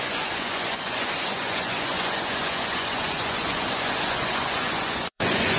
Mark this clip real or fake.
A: fake